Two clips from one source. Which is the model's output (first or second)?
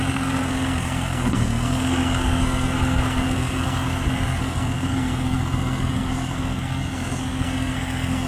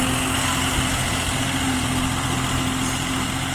first